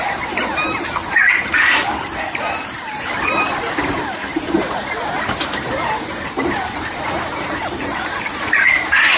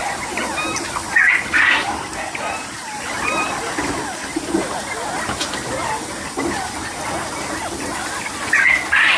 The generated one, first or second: first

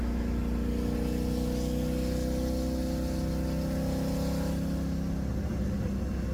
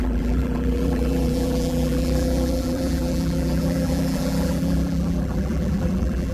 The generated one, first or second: second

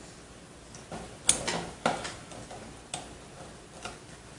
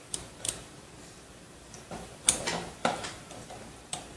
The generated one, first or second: second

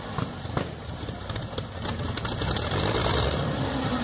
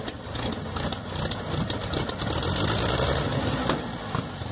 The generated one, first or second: first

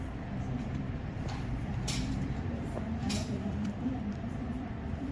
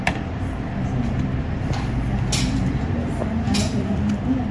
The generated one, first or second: first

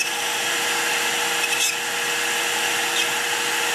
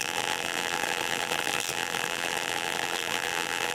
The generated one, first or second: second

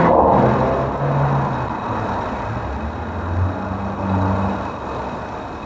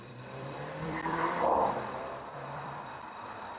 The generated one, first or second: second